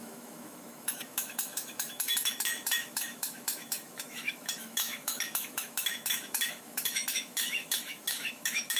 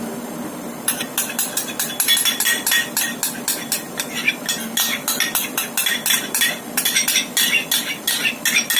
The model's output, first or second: first